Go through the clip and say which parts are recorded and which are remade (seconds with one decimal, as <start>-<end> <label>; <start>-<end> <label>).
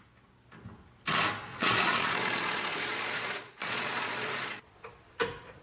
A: 0.0-1.5 recorded; 1.5-4.9 remade; 4.9-5.6 recorded